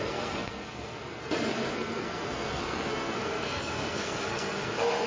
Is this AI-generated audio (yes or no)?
yes